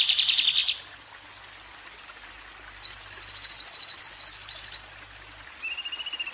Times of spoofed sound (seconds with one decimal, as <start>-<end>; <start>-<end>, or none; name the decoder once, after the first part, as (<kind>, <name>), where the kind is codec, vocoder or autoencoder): none